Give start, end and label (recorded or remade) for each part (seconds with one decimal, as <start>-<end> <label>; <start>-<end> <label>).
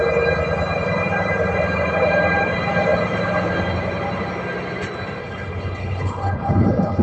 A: 0.0-5.2 recorded; 5.2-7.0 remade